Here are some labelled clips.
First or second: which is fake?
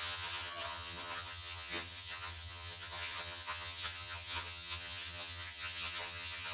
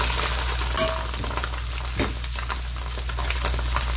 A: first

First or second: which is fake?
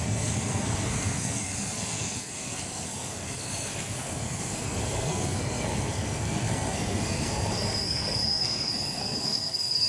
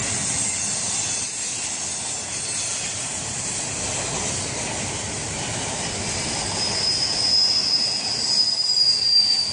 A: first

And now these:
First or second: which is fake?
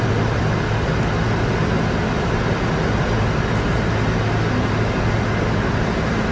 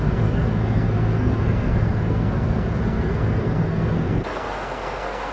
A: second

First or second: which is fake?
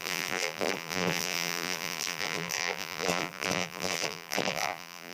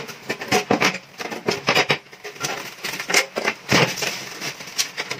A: first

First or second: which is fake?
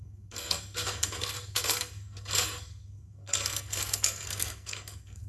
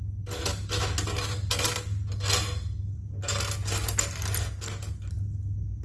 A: first